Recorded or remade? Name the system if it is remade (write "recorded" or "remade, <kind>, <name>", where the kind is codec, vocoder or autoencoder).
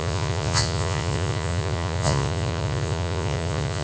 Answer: remade, vocoder, Vocos